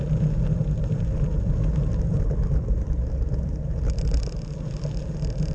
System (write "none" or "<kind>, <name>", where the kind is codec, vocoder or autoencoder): none